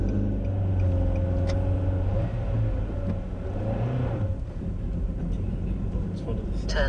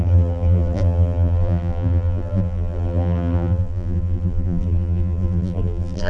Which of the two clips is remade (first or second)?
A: second